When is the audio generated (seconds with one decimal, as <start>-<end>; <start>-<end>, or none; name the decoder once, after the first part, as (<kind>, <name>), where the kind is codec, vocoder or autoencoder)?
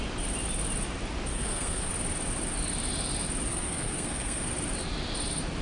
1.3-1.9 (codec, SNAC); 3.5-4.5